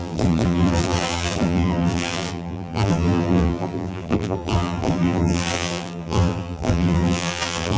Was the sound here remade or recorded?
remade